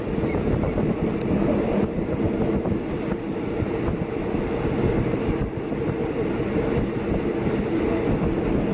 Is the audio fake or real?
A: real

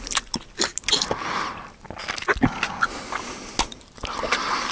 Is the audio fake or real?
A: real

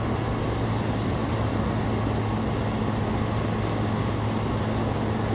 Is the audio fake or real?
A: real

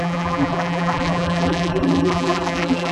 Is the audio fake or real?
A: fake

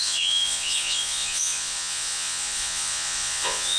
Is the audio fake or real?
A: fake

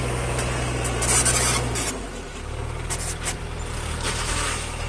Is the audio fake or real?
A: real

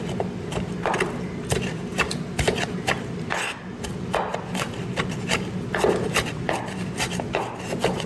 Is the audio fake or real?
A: real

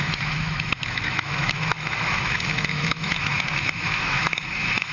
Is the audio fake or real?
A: fake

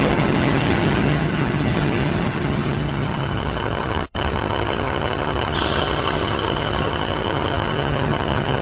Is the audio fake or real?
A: fake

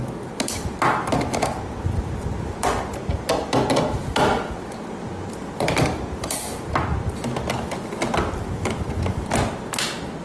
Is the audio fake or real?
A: real